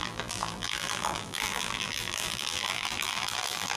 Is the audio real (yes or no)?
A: no